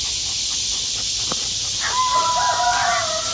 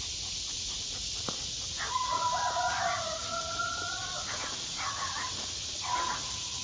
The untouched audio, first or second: first